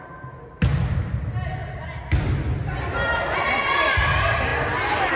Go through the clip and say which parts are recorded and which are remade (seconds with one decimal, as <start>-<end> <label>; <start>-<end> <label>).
0.0-5.2 recorded